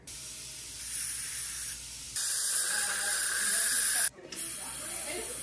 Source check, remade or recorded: remade